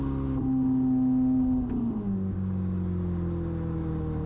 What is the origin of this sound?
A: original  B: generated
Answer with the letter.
A